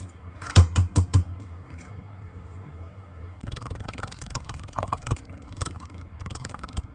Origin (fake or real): fake